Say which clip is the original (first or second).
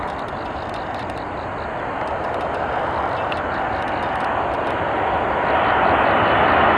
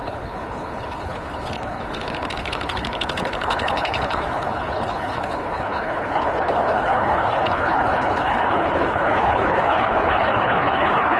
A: first